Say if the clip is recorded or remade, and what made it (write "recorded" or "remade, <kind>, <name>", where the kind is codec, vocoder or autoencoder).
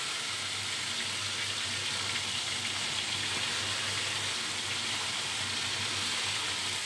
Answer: recorded